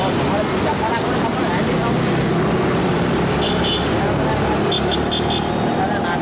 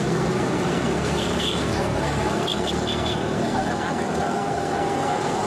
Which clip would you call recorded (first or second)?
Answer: first